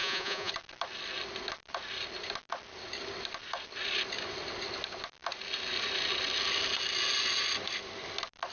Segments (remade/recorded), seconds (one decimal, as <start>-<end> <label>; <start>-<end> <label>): 0.0-0.5 remade; 0.5-8.5 recorded